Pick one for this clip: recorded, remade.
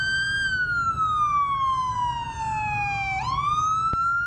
recorded